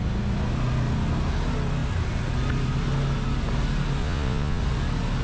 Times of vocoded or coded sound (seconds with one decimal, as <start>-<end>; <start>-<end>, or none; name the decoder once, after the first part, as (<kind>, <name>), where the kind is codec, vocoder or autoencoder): 4.0-4.6 (vocoder, Vocos)